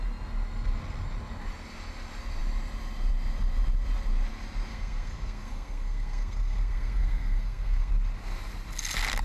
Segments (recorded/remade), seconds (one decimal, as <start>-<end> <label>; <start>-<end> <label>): 0.0-4.7 recorded; 4.7-7.9 remade; 7.9-9.2 recorded